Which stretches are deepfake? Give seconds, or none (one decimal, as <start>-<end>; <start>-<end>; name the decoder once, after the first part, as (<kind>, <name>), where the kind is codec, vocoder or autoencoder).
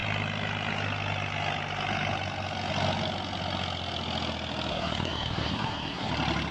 4.7-6.1 (codec, SNAC)